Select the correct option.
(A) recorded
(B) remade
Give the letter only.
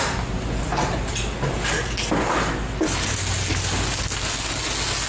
A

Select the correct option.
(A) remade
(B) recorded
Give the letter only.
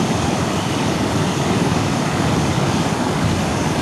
A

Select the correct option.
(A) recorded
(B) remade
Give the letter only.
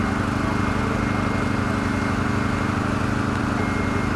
A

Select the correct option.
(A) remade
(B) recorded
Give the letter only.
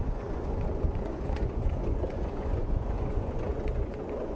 A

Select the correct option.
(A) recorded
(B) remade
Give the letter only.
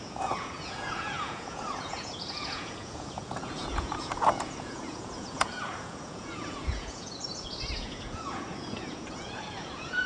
B